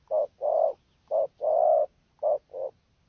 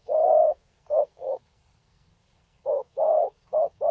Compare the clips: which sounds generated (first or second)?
second